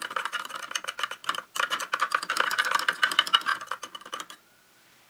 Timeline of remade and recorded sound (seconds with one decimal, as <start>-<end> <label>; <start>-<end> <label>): 0.0-5.1 recorded